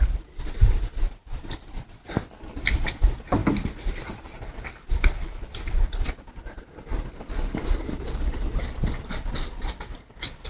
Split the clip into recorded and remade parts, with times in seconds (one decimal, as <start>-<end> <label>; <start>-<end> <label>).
0.0-10.5 recorded